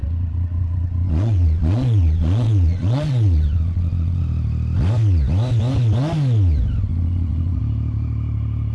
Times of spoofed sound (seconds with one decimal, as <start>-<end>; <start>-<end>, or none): 0.0-4.2; 6.9-7.6